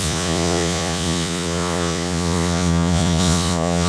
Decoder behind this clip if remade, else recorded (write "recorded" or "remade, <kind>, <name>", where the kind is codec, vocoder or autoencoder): remade, vocoder, Vocos